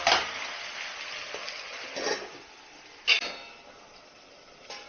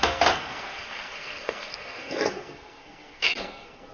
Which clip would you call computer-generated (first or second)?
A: second